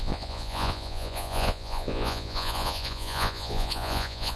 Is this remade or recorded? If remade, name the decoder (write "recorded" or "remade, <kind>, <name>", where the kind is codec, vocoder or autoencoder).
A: remade, vocoder, Vocos